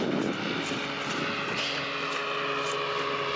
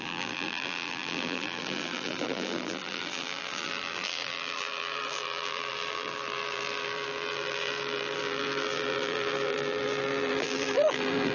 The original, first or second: first